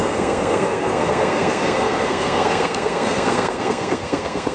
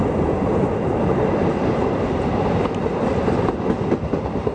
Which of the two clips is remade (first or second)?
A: first